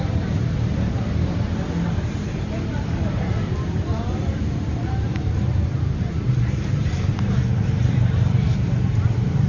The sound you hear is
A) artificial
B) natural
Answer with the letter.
A